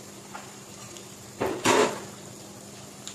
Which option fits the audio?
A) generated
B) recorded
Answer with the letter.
A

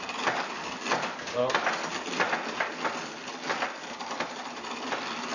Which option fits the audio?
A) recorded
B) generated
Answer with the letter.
B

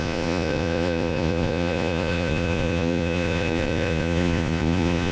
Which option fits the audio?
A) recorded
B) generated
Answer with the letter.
B